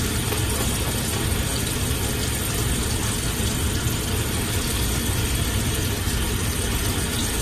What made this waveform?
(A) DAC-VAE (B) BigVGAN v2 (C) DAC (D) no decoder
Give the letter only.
D